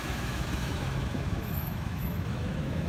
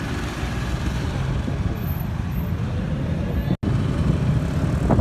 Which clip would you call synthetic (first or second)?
first